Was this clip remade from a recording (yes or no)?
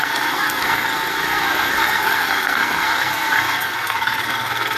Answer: yes